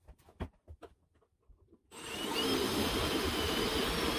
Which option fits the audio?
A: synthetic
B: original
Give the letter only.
B